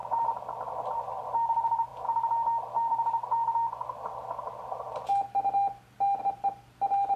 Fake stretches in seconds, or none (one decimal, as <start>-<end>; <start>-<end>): 1.0-1.9; 6.2-7.2